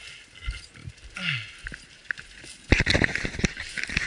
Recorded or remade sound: recorded